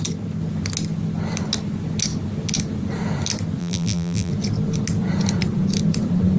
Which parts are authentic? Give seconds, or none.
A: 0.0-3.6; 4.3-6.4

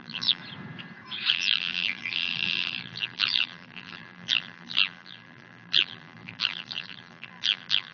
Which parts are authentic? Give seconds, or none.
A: 0.4-1.3

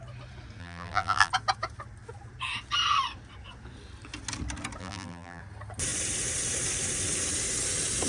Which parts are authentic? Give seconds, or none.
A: 0.0-0.6; 1.3-4.8; 5.4-8.1